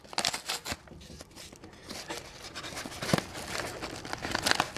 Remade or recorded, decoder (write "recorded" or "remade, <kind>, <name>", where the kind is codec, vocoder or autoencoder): recorded